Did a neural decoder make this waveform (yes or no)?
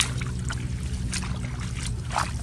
no